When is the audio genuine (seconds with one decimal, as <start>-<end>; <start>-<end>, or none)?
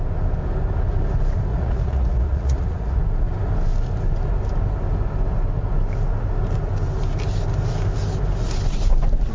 0.0-1.5; 3.0-9.3